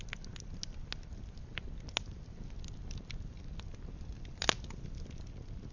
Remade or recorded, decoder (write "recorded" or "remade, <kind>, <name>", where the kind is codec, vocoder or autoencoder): recorded